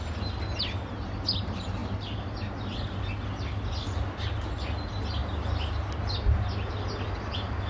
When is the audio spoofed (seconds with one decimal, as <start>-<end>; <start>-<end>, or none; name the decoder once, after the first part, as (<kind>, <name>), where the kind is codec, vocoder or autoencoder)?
none